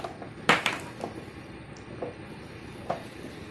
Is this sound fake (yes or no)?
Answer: no